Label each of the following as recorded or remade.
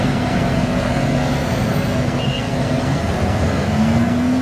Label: remade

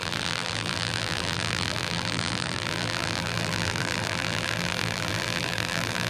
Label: remade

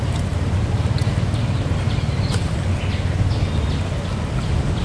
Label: recorded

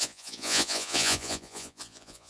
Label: remade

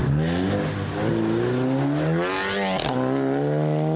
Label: recorded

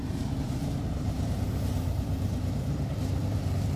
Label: remade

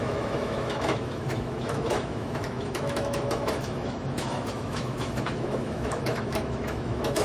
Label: remade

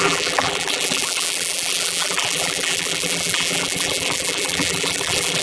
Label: remade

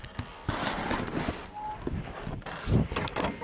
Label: recorded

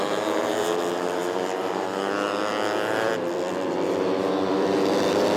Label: remade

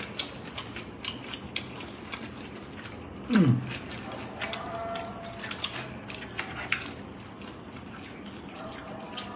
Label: recorded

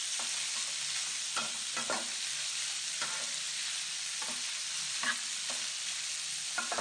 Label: remade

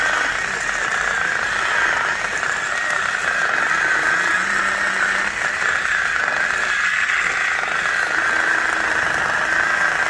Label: recorded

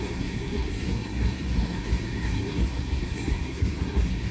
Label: remade